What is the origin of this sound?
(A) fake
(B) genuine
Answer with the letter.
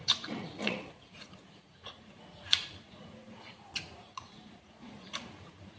A